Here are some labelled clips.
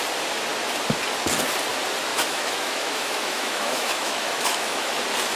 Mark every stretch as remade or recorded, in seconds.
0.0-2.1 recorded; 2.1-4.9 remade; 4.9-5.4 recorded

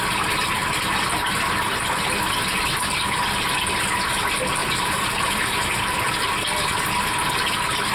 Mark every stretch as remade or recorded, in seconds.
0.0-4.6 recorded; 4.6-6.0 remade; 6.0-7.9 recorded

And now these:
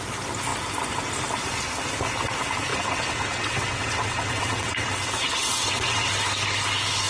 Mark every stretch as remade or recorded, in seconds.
0.0-2.7 recorded; 2.7-6.1 remade; 6.1-7.1 recorded

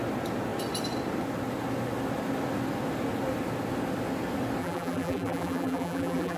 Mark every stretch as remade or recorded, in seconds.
0.0-4.6 recorded; 4.6-6.4 remade

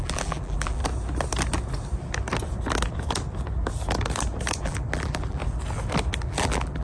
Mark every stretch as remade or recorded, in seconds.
0.0-0.8 remade; 0.8-4.6 recorded; 4.6-5.4 remade; 5.4-6.2 recorded; 6.2-6.8 remade

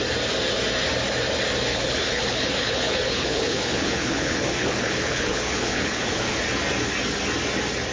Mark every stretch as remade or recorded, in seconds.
0.0-1.7 recorded; 1.7-6.4 remade; 6.4-7.9 recorded

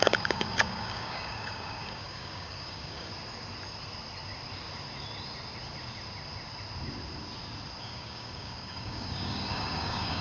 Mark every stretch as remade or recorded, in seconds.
0.0-3.1 remade; 3.1-7.8 recorded; 7.8-10.2 remade

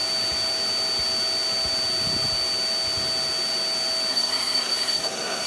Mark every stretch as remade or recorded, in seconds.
0.0-4.1 recorded; 4.1-5.5 remade